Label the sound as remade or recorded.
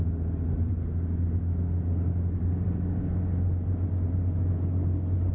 recorded